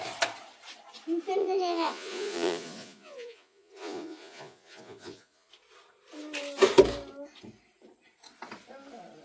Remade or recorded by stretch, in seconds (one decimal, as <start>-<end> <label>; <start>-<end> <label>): 0.0-1.4 recorded; 1.4-5.5 remade; 5.5-9.2 recorded